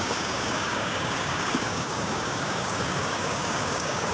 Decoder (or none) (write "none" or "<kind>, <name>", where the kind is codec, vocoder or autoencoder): codec, DAC